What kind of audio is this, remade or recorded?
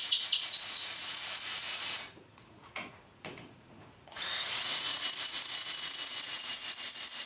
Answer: remade